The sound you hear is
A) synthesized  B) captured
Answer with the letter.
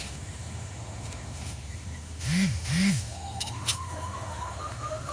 A